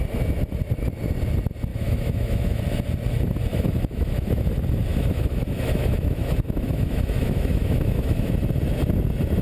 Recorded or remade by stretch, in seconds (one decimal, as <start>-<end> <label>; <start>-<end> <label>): 0.0-1.7 recorded; 1.7-2.6 remade; 2.6-3.5 recorded; 3.5-4.5 remade; 4.5-4.9 recorded; 4.9-8.3 remade; 8.3-9.4 recorded